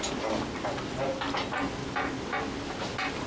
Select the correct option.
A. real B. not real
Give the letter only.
A